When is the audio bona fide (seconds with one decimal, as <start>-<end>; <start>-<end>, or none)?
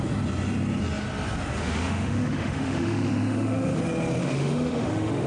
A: 0.0-1.6; 3.8-4.2